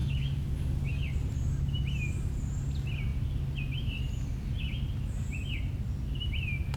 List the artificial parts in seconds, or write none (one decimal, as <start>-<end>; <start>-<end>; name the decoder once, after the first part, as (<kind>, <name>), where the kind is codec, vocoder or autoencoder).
0.0-1.0 (codec, DAC)

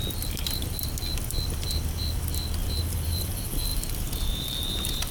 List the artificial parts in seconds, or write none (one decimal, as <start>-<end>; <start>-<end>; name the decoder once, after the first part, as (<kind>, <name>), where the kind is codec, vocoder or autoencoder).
2.6-3.2 (vocoder, BigVGAN v2); 3.7-5.1

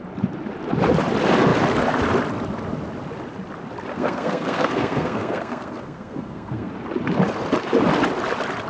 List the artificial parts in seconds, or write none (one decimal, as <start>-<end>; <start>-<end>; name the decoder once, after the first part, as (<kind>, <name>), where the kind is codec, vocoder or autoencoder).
3.9-6.7 (codec, SNAC)

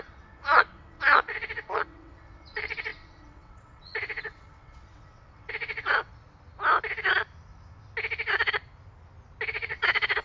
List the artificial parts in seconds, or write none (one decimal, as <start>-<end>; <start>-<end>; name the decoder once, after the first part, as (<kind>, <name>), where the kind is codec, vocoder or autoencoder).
0.0-6.1 (vocoder, WaveNeXt); 9.5-10.2

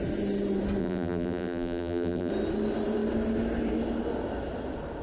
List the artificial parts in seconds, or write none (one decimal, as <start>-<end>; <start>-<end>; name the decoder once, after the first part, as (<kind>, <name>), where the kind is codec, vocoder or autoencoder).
0.8-2.3 (vocoder, BigVGAN v2)